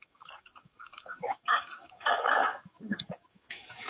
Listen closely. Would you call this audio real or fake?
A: fake